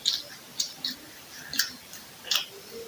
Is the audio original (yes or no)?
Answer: yes